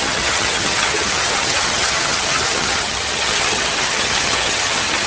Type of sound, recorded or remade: remade